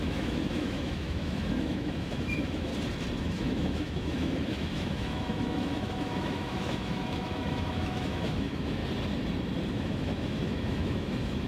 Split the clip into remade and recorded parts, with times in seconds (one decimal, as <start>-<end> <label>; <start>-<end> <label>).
0.0-2.7 remade; 2.7-3.2 recorded; 3.2-8.8 remade; 8.8-9.7 recorded; 9.7-11.5 remade